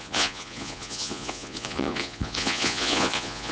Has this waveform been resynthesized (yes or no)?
yes